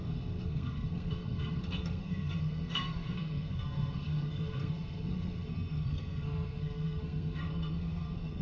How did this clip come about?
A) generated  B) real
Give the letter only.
A